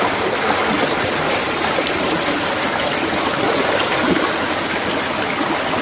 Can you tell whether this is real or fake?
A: real